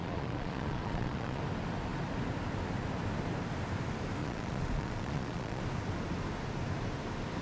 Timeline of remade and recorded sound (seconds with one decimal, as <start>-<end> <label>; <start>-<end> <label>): 0.0-1.4 remade; 1.4-4.2 recorded; 4.2-5.6 remade; 5.6-7.4 recorded